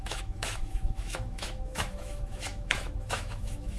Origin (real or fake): fake